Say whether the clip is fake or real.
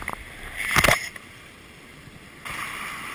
real